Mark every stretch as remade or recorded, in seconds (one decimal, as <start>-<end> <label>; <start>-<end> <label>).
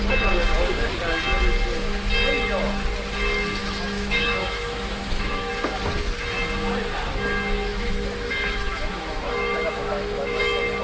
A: 0.0-3.6 recorded; 3.6-5.5 remade; 5.5-7.7 recorded; 7.7-10.4 remade; 10.4-10.8 recorded